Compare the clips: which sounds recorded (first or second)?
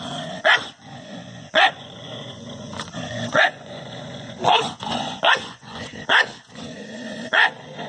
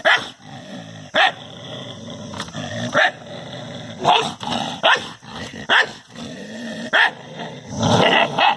second